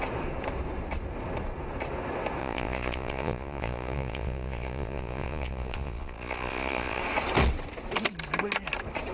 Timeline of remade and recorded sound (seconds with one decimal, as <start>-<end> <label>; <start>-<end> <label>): 0.0-2.4 recorded; 2.4-7.0 remade; 7.0-9.1 recorded